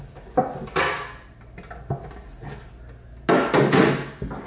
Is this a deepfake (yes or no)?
no